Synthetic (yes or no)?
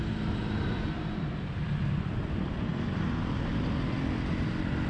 no